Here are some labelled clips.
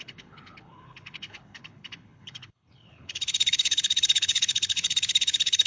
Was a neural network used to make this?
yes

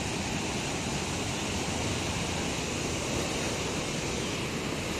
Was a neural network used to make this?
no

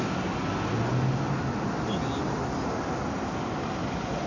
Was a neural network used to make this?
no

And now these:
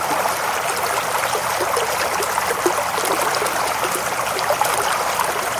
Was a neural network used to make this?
no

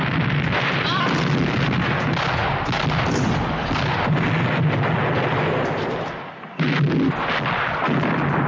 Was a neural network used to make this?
no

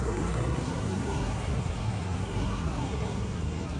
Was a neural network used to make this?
yes